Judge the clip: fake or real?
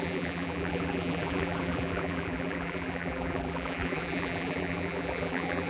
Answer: fake